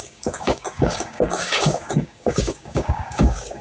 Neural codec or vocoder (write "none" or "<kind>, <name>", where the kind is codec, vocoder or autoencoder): codec, DAC